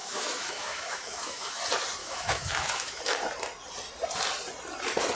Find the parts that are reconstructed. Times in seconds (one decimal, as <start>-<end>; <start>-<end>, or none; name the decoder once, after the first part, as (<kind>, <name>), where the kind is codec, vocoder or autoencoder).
0.0-1.6 (autoencoder, DAC-VAE); 2.0-3.0